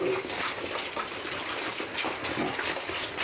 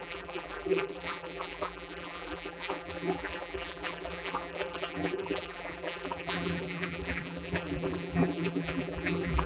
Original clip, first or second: first